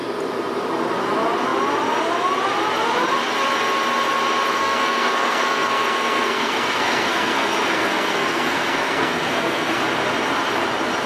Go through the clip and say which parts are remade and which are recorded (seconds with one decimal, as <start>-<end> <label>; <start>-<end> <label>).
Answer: 0.0-4.5 recorded; 4.5-9.8 remade; 9.8-11.1 recorded